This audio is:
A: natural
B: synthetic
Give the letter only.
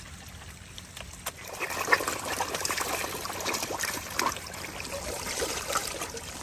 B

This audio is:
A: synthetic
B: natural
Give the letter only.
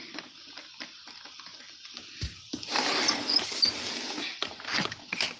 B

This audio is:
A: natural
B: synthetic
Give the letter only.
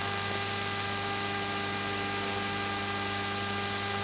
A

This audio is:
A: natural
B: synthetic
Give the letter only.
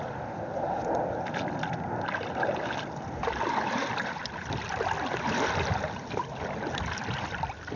A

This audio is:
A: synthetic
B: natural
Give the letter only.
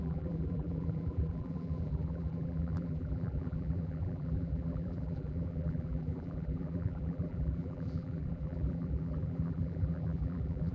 A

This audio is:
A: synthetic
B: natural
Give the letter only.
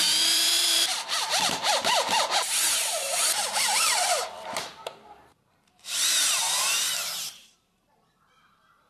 A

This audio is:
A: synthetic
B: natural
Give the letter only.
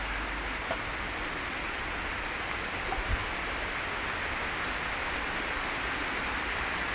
B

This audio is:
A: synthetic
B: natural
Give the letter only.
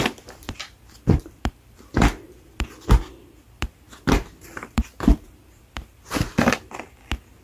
B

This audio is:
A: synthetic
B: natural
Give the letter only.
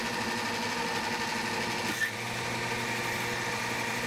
B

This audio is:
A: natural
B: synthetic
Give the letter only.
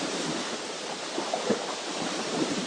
B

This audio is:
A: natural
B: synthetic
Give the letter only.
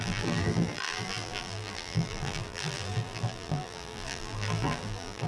B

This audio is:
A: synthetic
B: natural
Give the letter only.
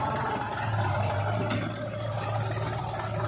B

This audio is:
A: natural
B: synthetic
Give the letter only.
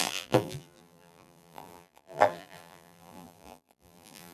B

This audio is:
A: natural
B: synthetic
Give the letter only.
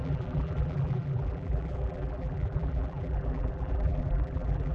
B